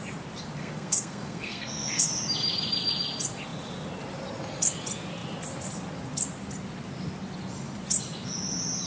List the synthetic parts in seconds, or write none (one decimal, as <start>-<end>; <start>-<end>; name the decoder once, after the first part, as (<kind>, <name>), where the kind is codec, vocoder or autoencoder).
0.6-2.1 (codec, SNAC)